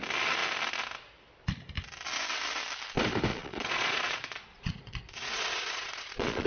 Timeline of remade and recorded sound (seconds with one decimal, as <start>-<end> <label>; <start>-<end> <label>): 0.0-3.3 recorded; 3.3-6.5 remade